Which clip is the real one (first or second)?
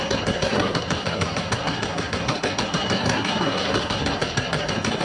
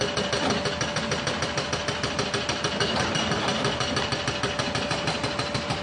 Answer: second